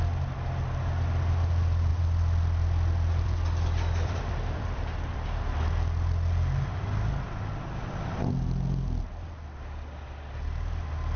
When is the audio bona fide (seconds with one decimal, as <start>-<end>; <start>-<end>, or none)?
0.0-1.9; 5.6-11.2